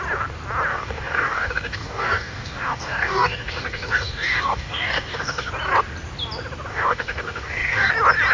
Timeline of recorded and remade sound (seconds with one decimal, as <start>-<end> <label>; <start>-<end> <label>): 0.0-0.7 recorded; 0.7-5.5 remade; 5.5-6.7 recorded; 6.7-7.9 remade; 7.9-8.3 recorded